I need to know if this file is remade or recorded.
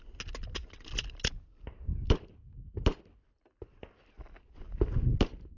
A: recorded